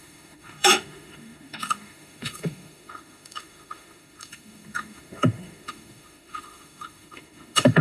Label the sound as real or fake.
fake